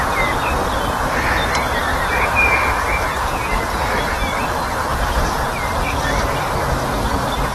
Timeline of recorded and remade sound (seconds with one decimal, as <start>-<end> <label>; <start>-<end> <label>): 0.0-1.9 recorded; 1.9-3.7 remade; 3.7-4.9 recorded; 4.9-5.4 remade; 5.4-7.5 recorded